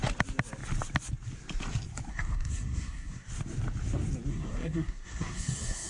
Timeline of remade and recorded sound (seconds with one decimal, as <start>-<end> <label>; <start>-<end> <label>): 0.0-2.1 recorded; 2.1-3.3 remade; 3.3-4.3 recorded; 4.3-5.9 remade